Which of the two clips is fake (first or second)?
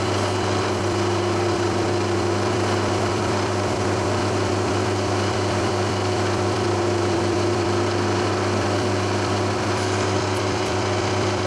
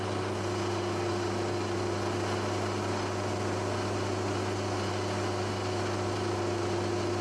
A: first